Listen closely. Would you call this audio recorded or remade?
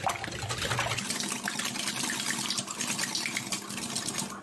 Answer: recorded